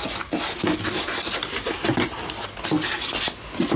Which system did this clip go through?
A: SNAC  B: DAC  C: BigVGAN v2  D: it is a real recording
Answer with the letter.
D